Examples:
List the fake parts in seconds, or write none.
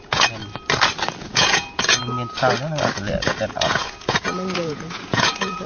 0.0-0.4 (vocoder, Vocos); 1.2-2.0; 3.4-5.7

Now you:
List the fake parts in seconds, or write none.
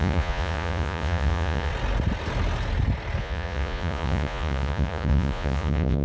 0.0-1.7 (vocoder, Vocos); 3.2-6.0